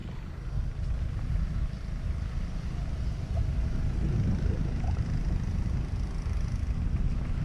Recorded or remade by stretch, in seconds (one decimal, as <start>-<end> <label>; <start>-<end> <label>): 0.0-7.4 recorded